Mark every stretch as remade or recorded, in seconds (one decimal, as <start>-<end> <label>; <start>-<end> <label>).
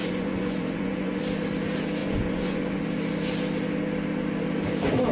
0.0-1.2 remade; 1.2-2.0 recorded; 2.0-2.8 remade; 2.8-5.1 recorded